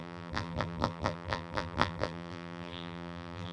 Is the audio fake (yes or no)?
yes